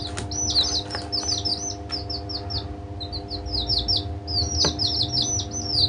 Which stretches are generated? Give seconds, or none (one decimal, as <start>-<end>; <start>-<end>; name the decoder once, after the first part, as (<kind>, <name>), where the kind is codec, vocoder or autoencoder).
none